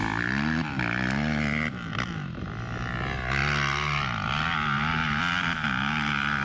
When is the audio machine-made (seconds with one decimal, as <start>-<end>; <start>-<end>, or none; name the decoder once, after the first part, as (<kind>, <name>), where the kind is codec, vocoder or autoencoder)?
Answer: none